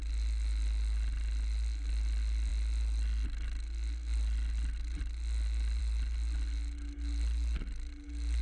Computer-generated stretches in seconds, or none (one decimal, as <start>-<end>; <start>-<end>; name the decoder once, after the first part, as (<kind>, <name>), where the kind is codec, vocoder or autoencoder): none